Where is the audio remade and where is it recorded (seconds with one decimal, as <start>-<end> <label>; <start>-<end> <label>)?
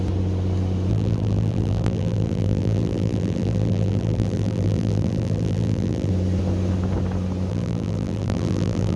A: 0.0-0.9 recorded; 0.9-6.1 remade; 6.1-7.5 recorded; 7.5-9.0 remade